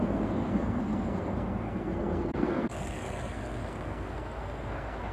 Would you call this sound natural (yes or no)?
no